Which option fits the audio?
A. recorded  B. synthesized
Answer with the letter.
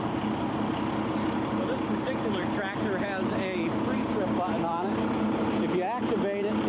A